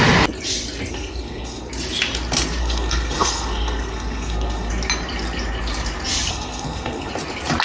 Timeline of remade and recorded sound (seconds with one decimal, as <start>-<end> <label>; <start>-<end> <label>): 0.0-0.9 recorded; 0.9-1.7 remade; 1.7-2.6 recorded; 2.6-4.7 remade; 4.7-6.3 recorded; 6.3-7.1 remade; 7.1-7.6 recorded